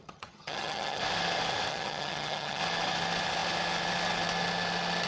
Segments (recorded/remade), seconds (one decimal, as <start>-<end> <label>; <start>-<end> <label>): 0.0-1.0 remade; 1.0-1.7 recorded; 1.7-2.6 remade; 2.6-5.1 recorded